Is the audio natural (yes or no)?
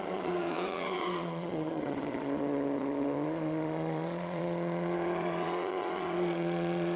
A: no